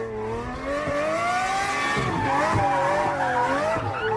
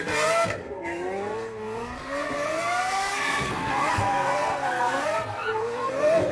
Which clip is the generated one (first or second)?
second